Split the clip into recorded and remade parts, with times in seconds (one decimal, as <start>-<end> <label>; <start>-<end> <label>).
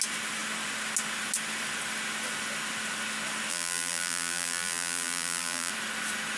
0.0-3.5 recorded; 3.5-5.7 remade; 5.7-6.4 recorded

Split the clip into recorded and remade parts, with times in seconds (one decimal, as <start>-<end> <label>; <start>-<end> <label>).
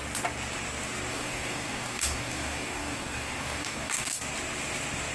0.0-1.1 recorded; 1.1-4.2 remade; 4.2-5.1 recorded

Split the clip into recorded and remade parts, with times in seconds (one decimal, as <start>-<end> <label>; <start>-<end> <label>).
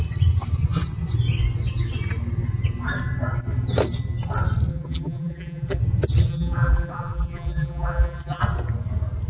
0.0-4.7 recorded; 4.7-5.8 remade; 5.8-6.3 recorded; 6.3-8.4 remade; 8.4-9.3 recorded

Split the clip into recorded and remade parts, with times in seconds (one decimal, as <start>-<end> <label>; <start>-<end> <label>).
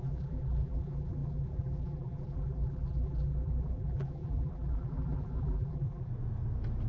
0.0-6.1 remade; 6.1-6.9 recorded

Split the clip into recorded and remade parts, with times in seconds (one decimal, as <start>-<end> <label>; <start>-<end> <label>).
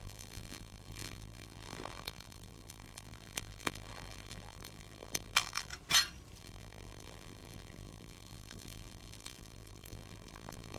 0.0-5.7 remade; 5.7-6.4 recorded; 6.4-10.8 remade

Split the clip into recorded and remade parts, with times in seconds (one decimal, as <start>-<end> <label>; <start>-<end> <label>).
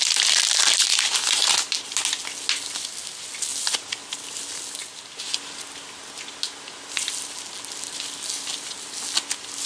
0.0-9.7 recorded